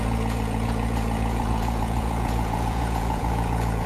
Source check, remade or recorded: remade